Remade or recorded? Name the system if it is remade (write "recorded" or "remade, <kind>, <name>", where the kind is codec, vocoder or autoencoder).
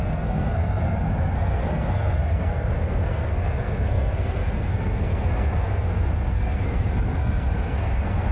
remade, codec, SNAC